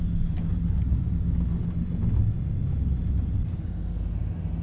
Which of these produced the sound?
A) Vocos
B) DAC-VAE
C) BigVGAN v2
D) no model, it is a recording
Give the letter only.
D